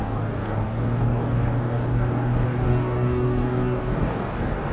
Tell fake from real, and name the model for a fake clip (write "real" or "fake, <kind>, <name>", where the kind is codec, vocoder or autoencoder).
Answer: fake, codec, DAC